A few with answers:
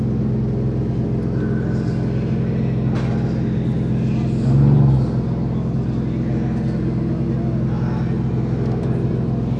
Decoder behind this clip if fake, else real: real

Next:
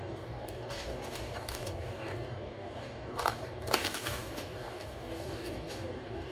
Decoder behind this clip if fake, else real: fake, codec, DAC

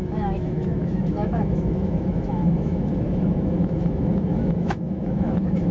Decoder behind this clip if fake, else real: fake, autoencoder, DAC-VAE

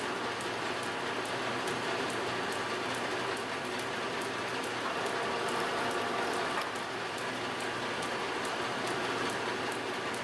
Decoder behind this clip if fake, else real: real